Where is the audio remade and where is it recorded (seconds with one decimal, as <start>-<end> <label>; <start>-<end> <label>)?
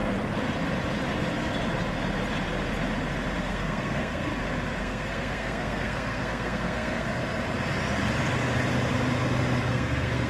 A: 0.0-3.4 recorded; 3.4-4.3 remade; 4.3-4.8 recorded; 4.8-7.2 remade; 7.2-9.7 recorded; 9.7-10.3 remade